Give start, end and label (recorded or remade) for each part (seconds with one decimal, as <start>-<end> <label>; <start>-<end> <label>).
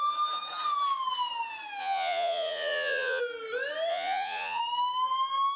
0.0-1.8 recorded; 1.8-3.2 remade; 3.2-3.9 recorded; 3.9-4.6 remade; 4.6-5.6 recorded